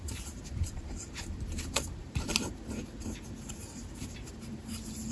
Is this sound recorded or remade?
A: remade